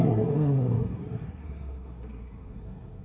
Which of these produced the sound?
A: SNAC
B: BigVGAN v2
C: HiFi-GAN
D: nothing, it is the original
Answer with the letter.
A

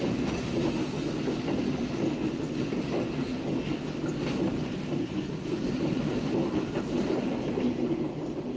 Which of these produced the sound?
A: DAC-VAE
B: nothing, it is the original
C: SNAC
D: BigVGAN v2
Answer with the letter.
B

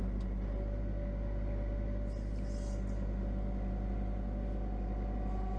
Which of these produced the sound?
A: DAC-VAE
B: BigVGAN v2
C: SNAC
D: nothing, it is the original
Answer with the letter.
D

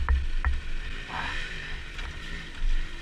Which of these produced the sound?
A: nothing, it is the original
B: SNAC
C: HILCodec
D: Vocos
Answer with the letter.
A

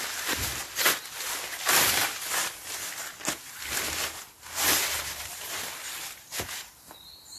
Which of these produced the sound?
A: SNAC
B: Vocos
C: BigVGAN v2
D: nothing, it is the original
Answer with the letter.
D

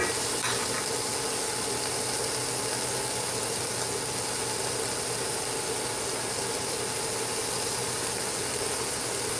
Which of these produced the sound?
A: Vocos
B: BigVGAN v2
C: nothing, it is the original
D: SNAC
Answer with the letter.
C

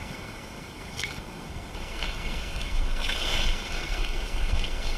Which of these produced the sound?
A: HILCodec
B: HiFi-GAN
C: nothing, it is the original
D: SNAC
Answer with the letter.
D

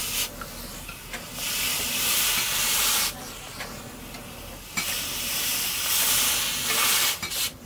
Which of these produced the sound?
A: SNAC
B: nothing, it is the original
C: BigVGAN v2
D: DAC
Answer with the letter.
B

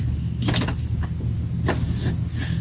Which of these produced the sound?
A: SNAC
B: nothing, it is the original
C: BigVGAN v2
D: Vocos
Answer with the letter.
B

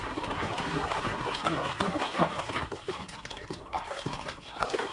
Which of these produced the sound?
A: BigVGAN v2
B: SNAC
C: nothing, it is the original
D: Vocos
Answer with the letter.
B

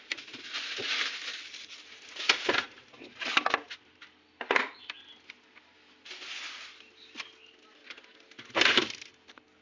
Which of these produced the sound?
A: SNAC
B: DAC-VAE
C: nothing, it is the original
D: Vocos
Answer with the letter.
C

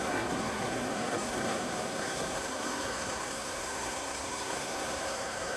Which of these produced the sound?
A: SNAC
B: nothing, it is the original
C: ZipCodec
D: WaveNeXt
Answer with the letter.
A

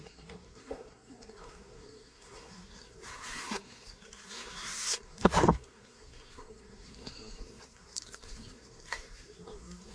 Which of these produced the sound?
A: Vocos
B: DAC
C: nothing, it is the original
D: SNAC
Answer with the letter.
D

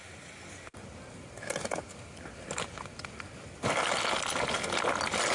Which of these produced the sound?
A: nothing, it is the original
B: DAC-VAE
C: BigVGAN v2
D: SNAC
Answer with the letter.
A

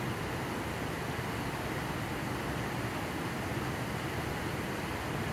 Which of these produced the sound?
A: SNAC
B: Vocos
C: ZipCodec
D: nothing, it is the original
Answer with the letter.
D